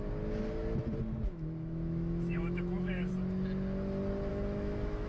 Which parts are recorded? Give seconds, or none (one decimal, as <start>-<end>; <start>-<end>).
0.0-1.3; 3.1-4.3